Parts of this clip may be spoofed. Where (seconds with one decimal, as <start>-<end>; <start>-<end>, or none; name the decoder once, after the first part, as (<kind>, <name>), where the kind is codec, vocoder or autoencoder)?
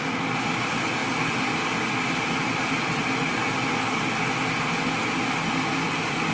none